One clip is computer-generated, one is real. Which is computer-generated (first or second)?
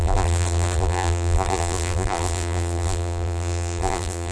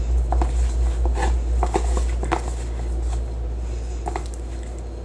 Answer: first